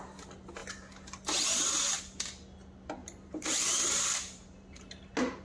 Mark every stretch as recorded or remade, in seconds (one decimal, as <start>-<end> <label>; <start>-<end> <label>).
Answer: 0.0-3.0 recorded; 3.0-4.8 remade; 4.8-5.4 recorded